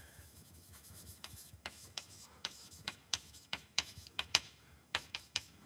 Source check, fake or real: fake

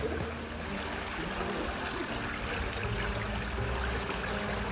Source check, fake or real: real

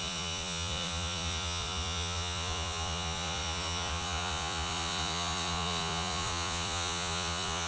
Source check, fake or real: fake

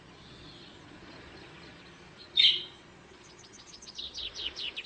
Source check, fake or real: fake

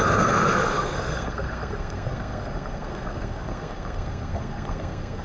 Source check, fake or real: fake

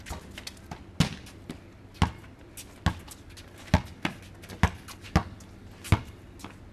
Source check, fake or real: real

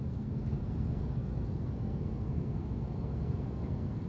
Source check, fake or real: fake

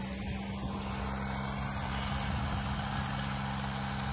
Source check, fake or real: real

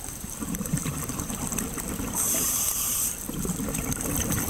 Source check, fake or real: fake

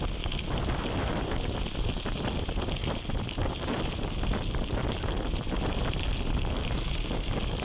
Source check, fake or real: real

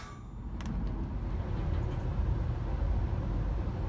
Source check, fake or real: real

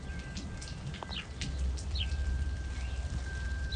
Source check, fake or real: fake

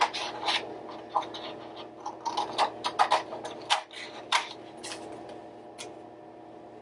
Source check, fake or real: real